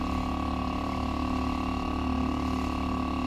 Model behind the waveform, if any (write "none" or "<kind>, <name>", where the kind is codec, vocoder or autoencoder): none